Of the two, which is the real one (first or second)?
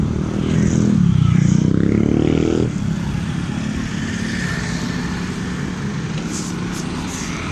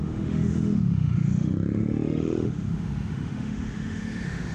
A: first